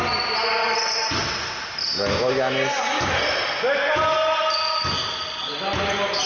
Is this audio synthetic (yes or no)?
no